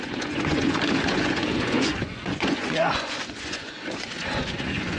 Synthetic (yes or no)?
yes